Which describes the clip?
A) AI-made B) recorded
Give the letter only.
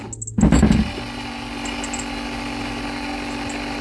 B